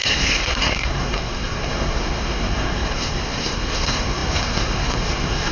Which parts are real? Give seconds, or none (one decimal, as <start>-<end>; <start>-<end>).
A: none